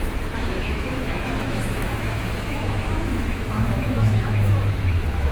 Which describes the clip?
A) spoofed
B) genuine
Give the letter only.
A